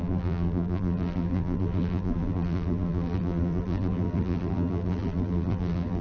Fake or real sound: fake